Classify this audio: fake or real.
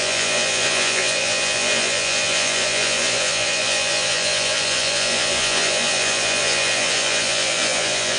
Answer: fake